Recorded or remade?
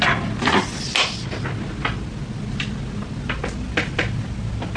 recorded